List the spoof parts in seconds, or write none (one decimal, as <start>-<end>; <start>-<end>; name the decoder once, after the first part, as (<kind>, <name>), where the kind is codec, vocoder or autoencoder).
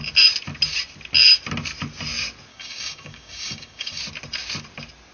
2.5-4.0 (codec, DAC)